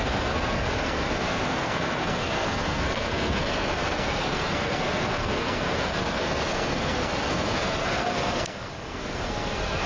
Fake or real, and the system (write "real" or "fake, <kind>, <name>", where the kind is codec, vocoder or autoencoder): fake, codec, SNAC